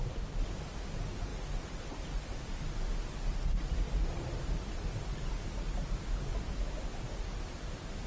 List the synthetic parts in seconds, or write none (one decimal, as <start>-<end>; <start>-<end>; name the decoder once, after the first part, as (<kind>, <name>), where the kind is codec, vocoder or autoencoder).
none